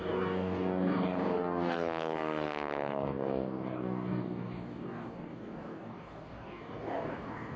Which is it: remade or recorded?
remade